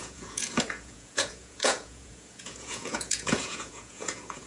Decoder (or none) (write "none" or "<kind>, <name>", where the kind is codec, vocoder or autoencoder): vocoder, Vocos